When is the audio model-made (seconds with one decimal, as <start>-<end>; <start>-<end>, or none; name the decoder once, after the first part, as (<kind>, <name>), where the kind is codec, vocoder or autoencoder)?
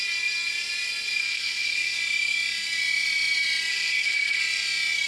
1.2-2.0 (codec, SNAC); 3.7-4.4